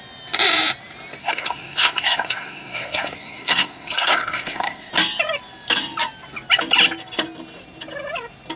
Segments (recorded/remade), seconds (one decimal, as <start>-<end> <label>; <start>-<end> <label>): 0.0-1.2 recorded; 1.2-4.9 remade; 4.9-8.6 recorded